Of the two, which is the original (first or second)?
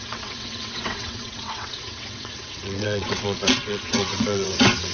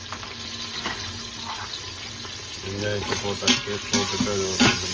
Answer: second